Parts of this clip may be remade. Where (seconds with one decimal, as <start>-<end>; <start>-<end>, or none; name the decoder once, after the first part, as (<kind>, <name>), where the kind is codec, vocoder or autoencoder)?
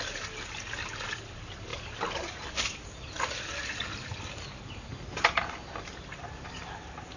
none